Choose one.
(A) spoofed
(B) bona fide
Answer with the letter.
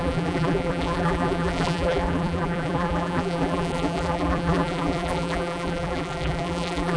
A